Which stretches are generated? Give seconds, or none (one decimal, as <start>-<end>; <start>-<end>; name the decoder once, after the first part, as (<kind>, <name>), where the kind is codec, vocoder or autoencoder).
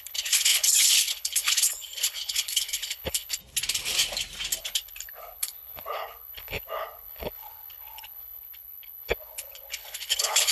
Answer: 0.0-3.4 (codec, HILCodec); 4.6-10.5